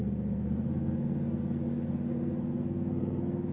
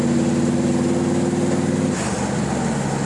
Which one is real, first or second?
second